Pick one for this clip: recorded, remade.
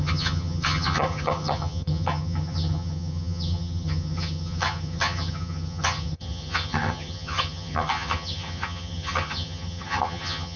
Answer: remade